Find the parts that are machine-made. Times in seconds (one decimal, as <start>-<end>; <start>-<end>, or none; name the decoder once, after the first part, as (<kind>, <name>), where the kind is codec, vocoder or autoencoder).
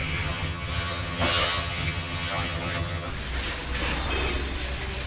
0.0-3.1 (vocoder, HiFi-GAN)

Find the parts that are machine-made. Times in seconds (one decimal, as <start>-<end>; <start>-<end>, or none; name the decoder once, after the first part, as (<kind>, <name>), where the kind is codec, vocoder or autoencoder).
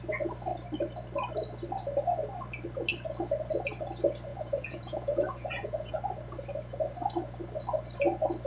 4.3-5.9 (vocoder, Vocos)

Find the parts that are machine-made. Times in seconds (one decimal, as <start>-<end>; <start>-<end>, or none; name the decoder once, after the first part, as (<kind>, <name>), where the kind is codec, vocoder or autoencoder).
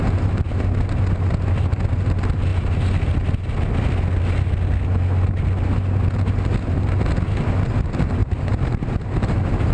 8.2-9.7 (vocoder, BigVGAN v2)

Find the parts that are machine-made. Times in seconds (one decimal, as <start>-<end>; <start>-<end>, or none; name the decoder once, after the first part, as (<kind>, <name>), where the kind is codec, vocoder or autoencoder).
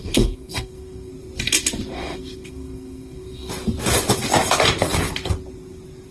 0.0-1.1 (codec, SNAC); 2.0-3.5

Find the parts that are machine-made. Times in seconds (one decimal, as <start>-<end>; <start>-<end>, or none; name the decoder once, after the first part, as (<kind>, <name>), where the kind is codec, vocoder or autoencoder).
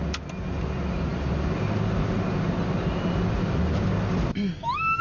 none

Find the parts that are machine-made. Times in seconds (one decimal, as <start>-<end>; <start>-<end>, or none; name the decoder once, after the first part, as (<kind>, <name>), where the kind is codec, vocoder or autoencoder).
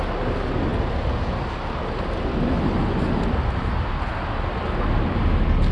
none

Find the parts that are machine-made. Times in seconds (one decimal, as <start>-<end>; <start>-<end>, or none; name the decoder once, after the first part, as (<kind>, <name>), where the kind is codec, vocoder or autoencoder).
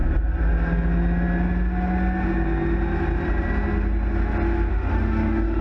4.7-5.6 (autoencoder, DAC-VAE)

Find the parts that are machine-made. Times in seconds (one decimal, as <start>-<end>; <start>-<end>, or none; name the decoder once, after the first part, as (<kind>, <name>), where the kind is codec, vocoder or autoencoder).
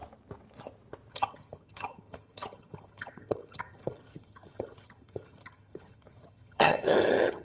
1.1-7.4 (vocoder, HiFi-GAN)